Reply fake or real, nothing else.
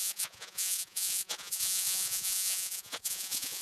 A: fake